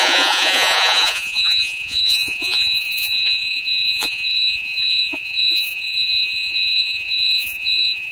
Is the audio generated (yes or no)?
yes